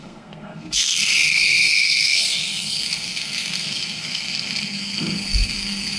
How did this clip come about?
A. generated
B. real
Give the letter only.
A